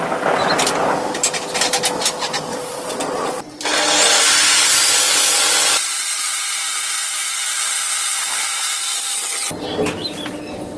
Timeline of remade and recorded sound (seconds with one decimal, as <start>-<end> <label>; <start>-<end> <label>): 0.0-2.5 recorded; 2.5-3.4 remade; 3.4-10.8 recorded